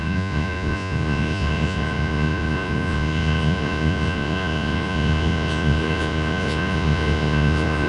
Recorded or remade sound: remade